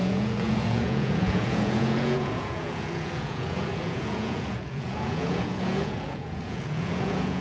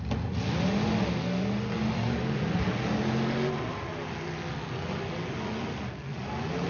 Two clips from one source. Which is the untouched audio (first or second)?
second